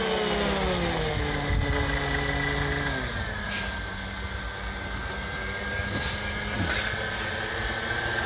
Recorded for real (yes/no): yes